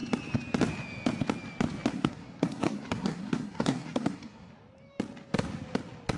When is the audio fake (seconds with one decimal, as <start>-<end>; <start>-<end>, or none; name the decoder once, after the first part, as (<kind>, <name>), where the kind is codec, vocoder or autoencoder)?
1.9-4.5 (codec, SNAC)